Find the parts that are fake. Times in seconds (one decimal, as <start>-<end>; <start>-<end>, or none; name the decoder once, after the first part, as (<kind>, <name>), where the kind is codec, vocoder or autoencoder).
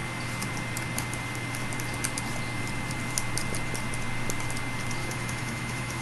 5.0-6.0 (autoencoder, DAC-VAE)